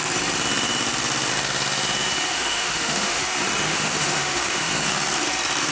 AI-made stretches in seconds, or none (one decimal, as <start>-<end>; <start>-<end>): 2.3-3.2; 3.7-4.7